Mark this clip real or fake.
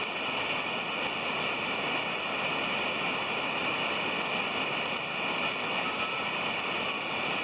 real